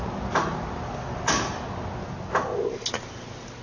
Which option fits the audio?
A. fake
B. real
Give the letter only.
B